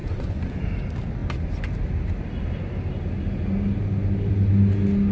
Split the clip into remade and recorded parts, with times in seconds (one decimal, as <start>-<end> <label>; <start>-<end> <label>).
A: 0.0-0.7 remade; 0.7-5.1 recorded